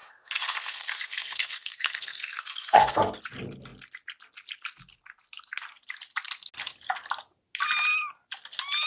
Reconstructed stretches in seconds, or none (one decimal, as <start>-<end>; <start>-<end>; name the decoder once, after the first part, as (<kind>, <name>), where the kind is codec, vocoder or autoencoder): 0.0-3.2 (codec, SNAC)